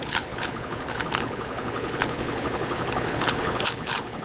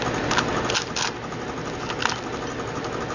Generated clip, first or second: first